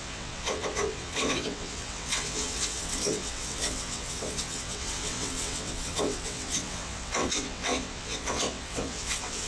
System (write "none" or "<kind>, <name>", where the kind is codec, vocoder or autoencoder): vocoder, WaveNeXt